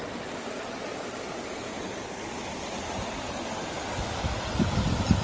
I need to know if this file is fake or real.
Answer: real